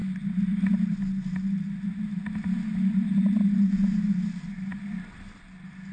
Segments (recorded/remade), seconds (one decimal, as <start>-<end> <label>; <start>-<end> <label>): 0.0-5.9 recorded